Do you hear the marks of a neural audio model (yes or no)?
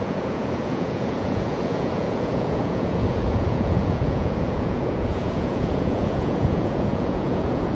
yes